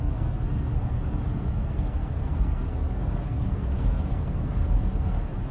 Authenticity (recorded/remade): remade